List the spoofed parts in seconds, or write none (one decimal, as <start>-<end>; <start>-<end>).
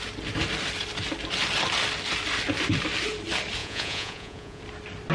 3.6-4.6